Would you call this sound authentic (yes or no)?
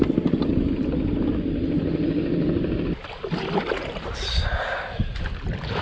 yes